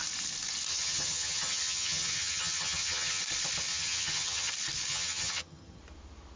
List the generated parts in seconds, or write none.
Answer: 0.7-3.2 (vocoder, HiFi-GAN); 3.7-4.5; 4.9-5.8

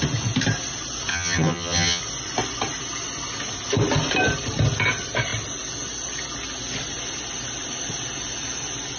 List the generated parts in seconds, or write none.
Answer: 1.1-2.0 (vocoder, HiFi-GAN)

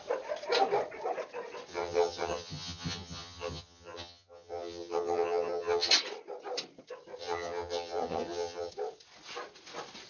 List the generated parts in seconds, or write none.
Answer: 1.7-5.9 (vocoder, HiFi-GAN); 7.2-8.7

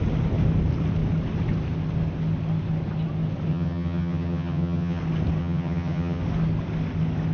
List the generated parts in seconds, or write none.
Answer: 3.5-5.0 (vocoder, HiFi-GAN); 5.4-6.2

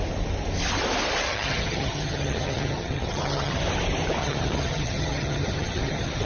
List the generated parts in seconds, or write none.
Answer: 1.3-3.6 (vocoder, HiFi-GAN); 4.2-6.3

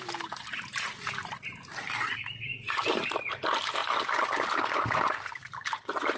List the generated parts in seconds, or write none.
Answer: none

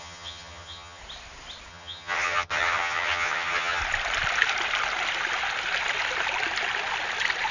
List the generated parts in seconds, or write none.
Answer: 0.0-1.0 (vocoder, HiFi-GAN); 1.7-3.8